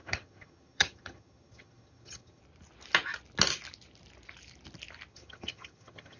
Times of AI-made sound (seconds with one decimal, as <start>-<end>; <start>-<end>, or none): 0.0-2.4; 5.1-6.2